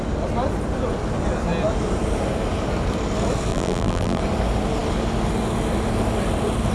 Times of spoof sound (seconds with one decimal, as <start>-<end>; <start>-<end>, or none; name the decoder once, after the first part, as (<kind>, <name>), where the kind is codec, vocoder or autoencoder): 3.5-4.2 (vocoder, BigVGAN v2)